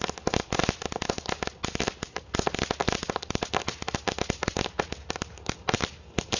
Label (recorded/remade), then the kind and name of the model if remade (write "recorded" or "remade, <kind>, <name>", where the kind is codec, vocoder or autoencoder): recorded